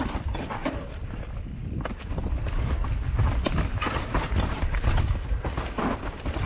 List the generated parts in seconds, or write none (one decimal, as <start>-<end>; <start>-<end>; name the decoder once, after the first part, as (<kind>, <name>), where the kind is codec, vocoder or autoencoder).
0.0-6.5 (vocoder, BigVGAN v2)